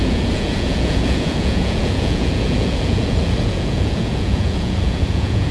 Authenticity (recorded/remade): remade